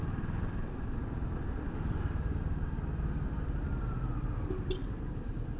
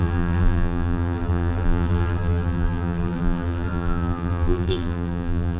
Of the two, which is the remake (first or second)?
second